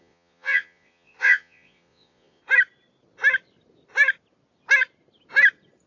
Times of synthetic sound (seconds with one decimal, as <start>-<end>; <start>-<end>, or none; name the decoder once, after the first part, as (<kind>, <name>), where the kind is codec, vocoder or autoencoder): 0.0-2.4 (vocoder, Vocos)